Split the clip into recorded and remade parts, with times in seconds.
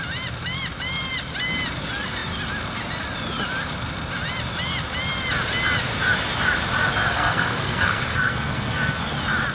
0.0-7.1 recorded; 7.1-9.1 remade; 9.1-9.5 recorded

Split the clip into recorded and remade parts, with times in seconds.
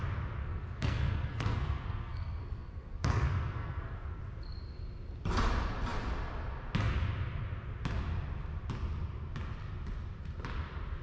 0.0-0.4 recorded; 0.4-4.2 remade; 4.2-11.0 recorded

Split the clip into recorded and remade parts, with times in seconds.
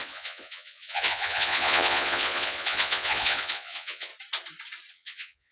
0.0-4.1 remade; 4.1-4.9 recorded; 4.9-5.5 remade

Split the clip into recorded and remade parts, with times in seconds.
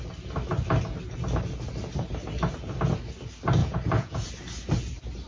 0.0-3.6 recorded; 3.6-4.3 remade; 4.3-5.3 recorded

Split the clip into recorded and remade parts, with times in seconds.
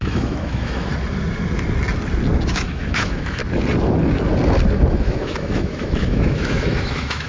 0.0-0.9 remade; 0.9-2.5 recorded; 2.5-3.4 remade; 3.4-5.0 recorded; 5.0-7.3 remade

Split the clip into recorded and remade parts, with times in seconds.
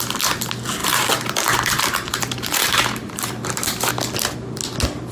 0.0-0.8 recorded; 0.8-3.9 remade; 3.9-5.1 recorded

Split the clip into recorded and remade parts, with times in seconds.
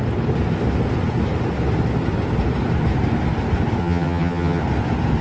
0.0-3.8 recorded; 3.8-4.6 remade; 4.6-5.2 recorded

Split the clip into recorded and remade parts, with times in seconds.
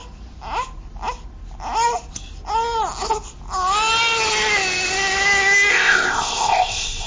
0.0-5.7 recorded; 5.7-7.1 remade